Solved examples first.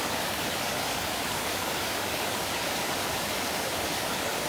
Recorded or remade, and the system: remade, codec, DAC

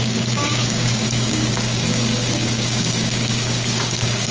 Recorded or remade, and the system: remade, codec, DAC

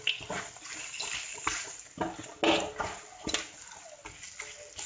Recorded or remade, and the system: recorded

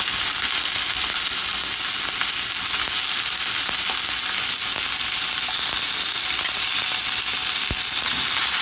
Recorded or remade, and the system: recorded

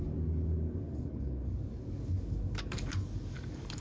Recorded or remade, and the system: remade, codec, DAC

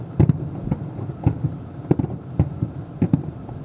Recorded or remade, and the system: recorded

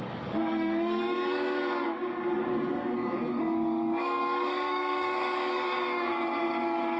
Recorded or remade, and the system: remade, codec, DAC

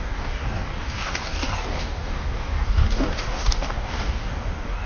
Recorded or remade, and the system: remade, codec, DAC